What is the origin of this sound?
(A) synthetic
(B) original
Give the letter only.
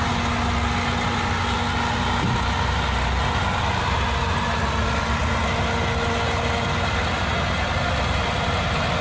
B